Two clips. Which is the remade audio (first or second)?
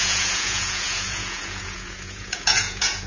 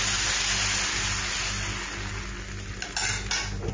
first